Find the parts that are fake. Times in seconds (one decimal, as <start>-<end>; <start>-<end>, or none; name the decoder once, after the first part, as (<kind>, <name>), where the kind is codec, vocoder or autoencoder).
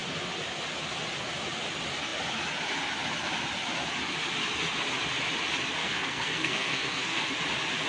5.8-7.2 (codec, SNAC)